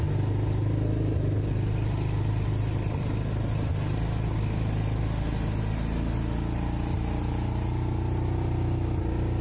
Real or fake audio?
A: real